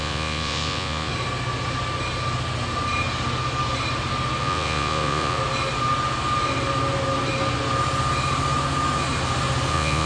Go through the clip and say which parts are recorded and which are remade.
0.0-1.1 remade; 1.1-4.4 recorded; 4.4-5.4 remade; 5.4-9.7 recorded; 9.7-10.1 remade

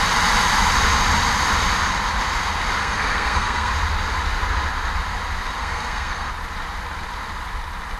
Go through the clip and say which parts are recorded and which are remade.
0.0-2.8 recorded; 2.8-3.7 remade; 3.7-5.6 recorded; 5.6-6.3 remade; 6.3-8.0 recorded